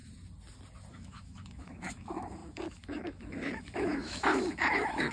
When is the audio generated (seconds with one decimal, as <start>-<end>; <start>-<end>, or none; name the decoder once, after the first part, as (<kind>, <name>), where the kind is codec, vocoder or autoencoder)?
0.9-5.1 (autoencoder, DAC-VAE)